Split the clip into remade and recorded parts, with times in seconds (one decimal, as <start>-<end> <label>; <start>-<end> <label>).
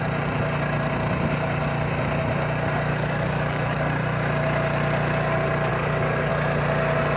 0.0-2.9 recorded; 2.9-3.9 remade; 3.9-5.7 recorded; 5.7-6.3 remade; 6.3-7.2 recorded